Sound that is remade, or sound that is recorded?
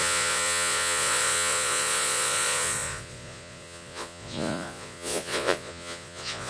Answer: remade